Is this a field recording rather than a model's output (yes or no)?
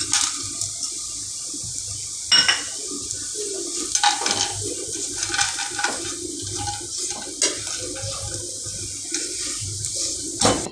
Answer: yes